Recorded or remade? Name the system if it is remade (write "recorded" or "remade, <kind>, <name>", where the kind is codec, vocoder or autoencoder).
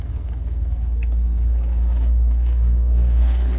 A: remade, codec, SNAC